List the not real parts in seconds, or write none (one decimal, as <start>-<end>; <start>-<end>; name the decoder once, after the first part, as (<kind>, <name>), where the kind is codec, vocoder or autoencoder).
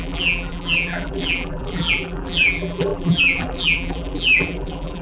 0.0-5.0 (vocoder, BigVGAN v2)